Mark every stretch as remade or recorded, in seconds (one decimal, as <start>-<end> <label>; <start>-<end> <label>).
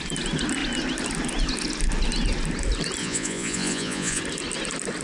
0.0-3.0 recorded; 3.0-4.2 remade; 4.2-5.0 recorded